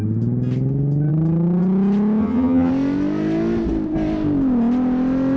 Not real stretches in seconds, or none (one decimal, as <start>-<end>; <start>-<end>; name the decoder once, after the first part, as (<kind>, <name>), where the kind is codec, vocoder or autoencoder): 2.2-2.7 (vocoder, HiFi-GAN)